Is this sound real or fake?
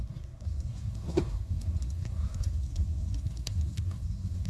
fake